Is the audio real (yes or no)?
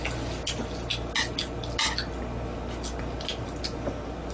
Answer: yes